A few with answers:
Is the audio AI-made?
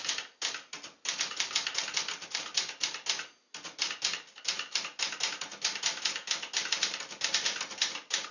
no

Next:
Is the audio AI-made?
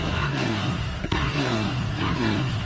yes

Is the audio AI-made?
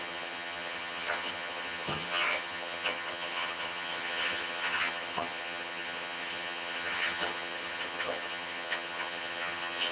yes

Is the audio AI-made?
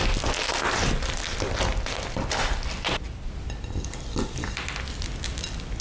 no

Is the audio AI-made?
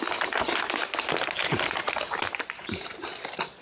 no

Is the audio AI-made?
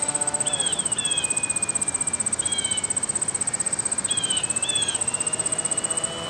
no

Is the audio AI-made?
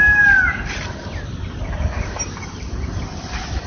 no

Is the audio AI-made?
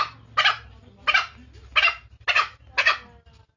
no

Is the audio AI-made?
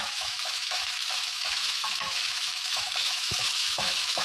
yes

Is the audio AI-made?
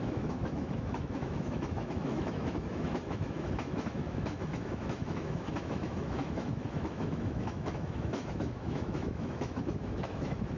yes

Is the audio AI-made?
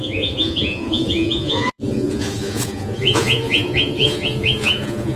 yes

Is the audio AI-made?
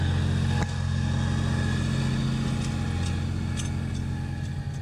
no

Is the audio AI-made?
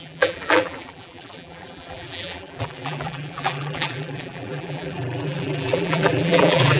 yes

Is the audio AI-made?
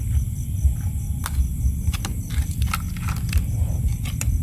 no